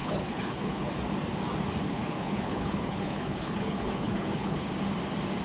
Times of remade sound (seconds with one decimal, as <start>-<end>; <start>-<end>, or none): 0.0-0.9; 1.9-4.7